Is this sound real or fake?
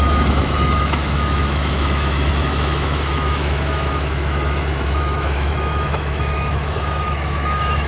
fake